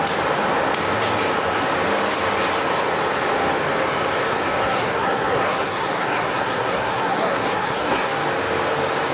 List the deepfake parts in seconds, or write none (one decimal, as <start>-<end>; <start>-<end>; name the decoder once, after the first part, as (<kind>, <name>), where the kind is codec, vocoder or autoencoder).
4.6-8.1 (codec, SNAC)